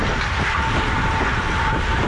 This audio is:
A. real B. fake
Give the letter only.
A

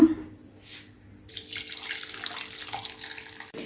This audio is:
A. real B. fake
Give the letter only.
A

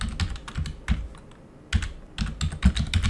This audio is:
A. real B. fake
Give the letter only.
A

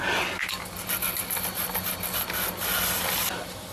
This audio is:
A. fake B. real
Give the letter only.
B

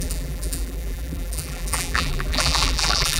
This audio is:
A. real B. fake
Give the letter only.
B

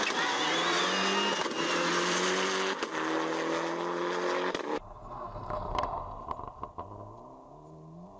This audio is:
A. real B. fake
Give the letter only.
A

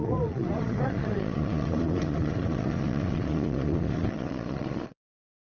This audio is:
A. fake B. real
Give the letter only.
A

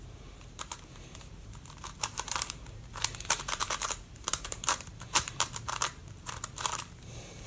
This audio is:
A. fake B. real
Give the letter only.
A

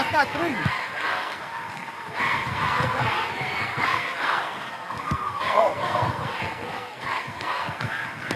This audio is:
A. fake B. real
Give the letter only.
A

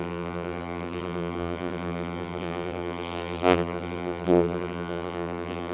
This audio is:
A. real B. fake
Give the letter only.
B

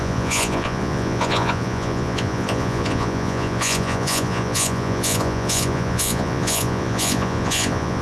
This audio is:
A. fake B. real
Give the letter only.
A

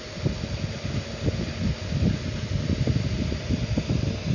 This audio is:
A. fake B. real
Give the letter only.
B